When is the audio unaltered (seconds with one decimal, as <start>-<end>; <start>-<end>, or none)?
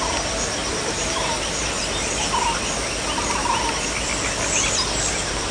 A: 0.0-0.6; 2.1-5.5